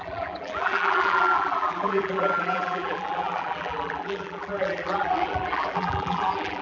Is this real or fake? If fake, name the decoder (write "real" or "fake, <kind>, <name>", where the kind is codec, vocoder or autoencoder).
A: fake, vocoder, BigVGAN v2